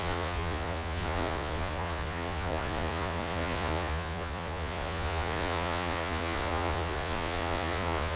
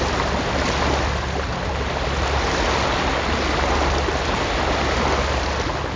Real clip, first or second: second